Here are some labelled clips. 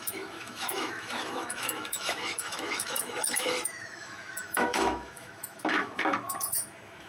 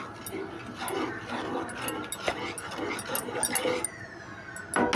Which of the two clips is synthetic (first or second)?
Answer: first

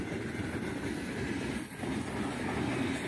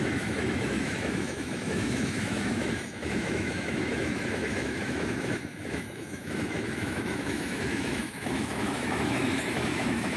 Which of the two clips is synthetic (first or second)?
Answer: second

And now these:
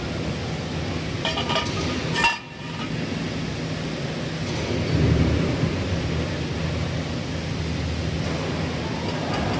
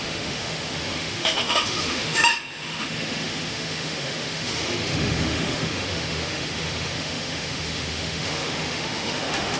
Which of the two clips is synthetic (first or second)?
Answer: second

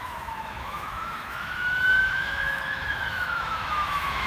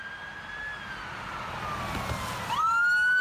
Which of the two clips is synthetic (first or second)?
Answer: first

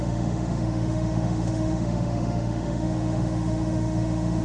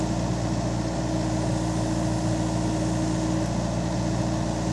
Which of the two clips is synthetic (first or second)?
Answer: first